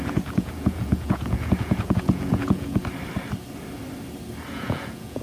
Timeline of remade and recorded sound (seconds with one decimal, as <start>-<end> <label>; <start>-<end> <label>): 0.0-2.8 remade; 2.8-4.5 recorded; 4.5-5.2 remade